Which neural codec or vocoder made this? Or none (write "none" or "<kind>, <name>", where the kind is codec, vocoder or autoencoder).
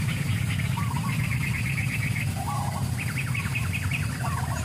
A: vocoder, BigVGAN v2